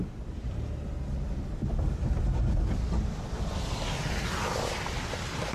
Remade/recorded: recorded